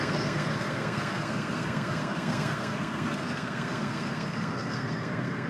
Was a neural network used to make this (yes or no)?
yes